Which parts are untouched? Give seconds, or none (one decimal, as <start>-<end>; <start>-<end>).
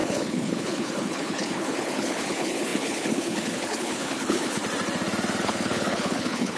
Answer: 4.6-5.4